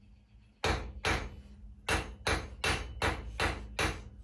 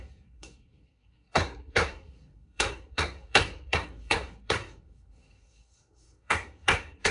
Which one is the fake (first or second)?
second